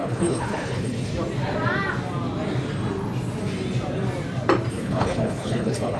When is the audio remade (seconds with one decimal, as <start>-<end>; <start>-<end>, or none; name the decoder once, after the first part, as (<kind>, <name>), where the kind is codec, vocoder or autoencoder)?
0.0-1.1 (codec, HILCodec); 4.7-6.0